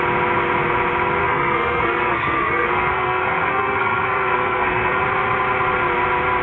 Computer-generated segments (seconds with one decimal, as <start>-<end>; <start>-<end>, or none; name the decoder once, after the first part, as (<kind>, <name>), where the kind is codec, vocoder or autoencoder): 1.2-5.0 (codec, SNAC)